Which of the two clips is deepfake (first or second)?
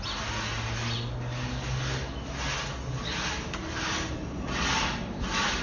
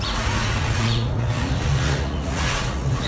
second